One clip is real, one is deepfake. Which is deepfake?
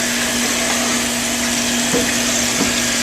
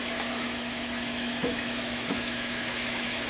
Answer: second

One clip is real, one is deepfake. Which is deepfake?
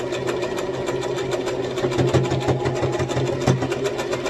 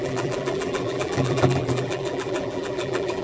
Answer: second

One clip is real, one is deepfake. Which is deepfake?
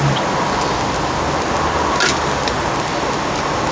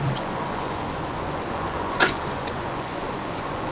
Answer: second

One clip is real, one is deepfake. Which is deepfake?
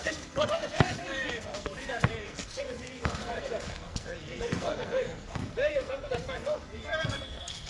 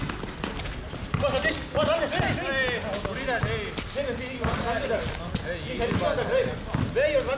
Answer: first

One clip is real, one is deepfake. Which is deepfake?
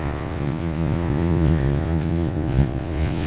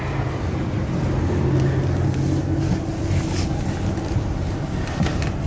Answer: first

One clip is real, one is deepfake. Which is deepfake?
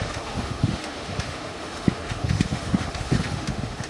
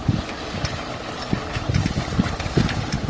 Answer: first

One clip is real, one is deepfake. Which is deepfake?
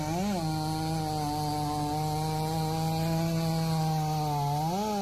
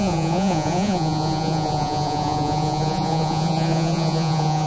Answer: second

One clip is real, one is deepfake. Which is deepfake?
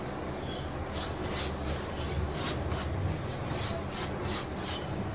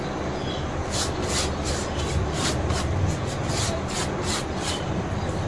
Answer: second